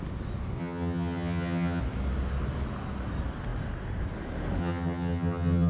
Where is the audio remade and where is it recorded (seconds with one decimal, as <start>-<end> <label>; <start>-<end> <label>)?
0.0-0.6 recorded; 0.6-1.8 remade; 1.8-4.6 recorded; 4.6-5.7 remade